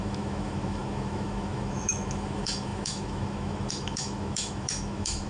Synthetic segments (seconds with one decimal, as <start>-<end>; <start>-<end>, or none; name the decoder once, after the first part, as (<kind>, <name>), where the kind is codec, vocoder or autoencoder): 0.0-5.3 (autoencoder, DAC-VAE)